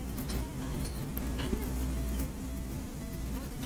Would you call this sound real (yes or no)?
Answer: yes